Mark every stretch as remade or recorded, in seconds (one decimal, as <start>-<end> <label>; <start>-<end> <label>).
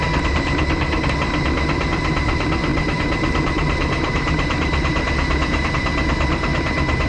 0.0-2.7 recorded; 2.7-5.7 remade; 5.7-7.1 recorded